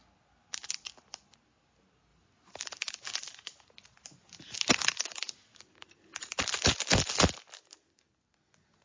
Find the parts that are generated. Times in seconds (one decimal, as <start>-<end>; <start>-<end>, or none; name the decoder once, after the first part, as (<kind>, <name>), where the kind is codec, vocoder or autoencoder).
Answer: none